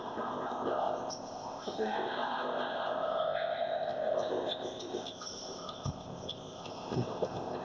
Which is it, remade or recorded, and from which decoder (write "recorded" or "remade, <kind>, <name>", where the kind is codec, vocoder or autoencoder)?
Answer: remade, codec, ZipCodec